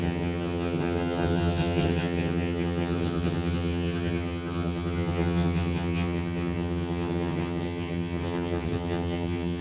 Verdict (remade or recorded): remade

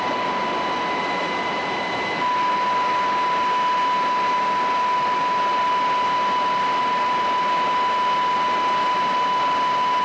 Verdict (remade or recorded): recorded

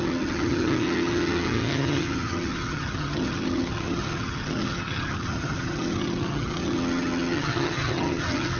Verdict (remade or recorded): remade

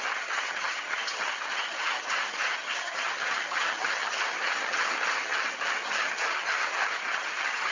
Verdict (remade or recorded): remade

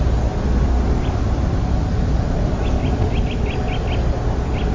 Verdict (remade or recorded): recorded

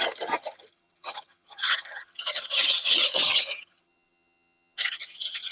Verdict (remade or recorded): remade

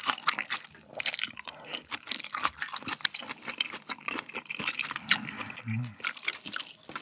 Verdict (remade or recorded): recorded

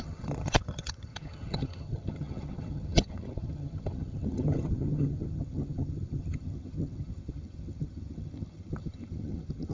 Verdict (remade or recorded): remade